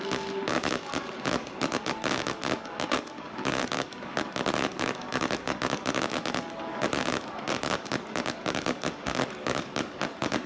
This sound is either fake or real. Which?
fake